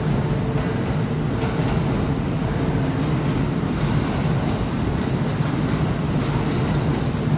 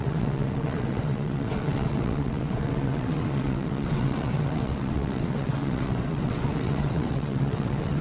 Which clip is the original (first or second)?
first